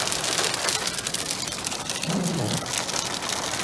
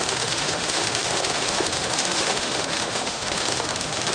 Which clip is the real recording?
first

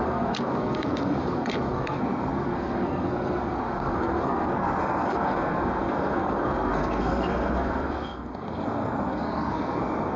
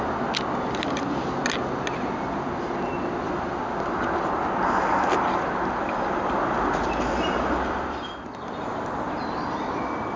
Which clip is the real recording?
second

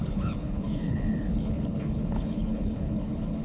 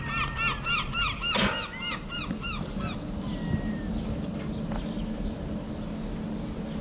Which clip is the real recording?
second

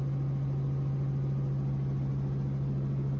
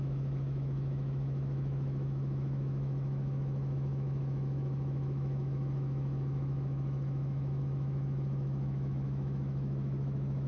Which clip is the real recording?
first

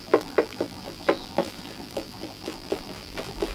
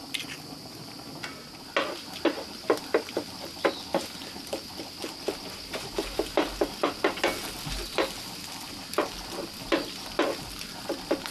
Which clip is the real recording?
second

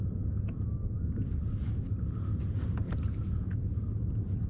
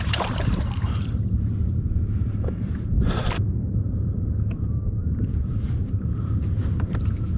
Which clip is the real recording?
first